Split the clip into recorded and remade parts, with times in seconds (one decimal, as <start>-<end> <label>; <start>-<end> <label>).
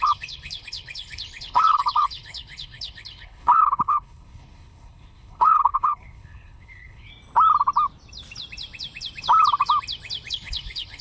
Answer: 0.0-7.1 remade; 7.1-10.3 recorded; 10.3-11.0 remade